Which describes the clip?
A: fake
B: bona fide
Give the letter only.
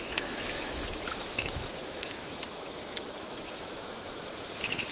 A